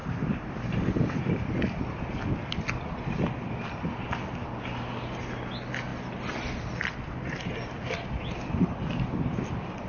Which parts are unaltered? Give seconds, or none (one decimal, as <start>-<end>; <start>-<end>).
0.0-9.9